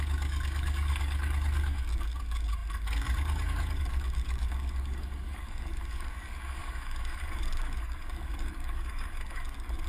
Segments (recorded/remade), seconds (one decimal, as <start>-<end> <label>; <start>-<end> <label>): 0.0-9.9 remade